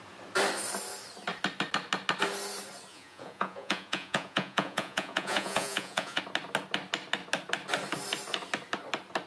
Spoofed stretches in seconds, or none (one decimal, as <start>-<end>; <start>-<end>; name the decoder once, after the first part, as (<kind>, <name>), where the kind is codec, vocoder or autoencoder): 2.9-6.2 (vocoder, Vocos)